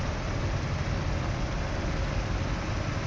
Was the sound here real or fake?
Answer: real